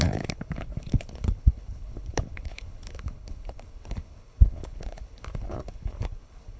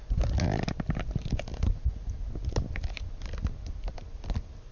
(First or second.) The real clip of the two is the second